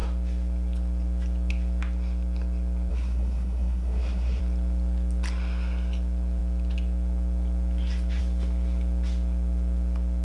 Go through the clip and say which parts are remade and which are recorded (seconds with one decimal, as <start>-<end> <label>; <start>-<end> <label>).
0.0-2.9 recorded; 2.9-4.4 remade; 4.4-10.2 recorded